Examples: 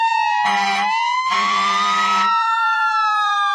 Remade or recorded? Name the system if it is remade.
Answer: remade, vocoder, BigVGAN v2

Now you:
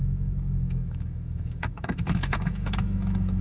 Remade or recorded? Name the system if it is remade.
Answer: remade, autoencoder, DAC-VAE